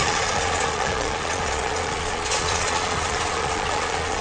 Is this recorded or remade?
remade